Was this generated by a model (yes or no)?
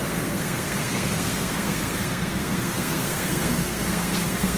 yes